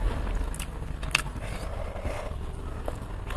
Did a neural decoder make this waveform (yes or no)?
no